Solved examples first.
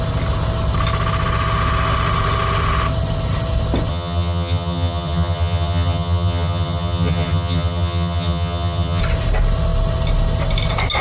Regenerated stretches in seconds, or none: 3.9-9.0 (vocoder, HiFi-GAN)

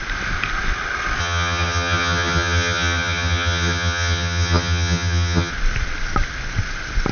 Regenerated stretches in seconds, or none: 1.2-5.5 (vocoder, HiFi-GAN)

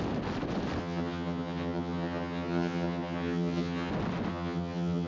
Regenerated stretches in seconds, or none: 0.8-3.9 (vocoder, HiFi-GAN); 4.3-5.1